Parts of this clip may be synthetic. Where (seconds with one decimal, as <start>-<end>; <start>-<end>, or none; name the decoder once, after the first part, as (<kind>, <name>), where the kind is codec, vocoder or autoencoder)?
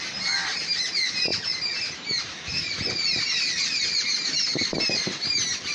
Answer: none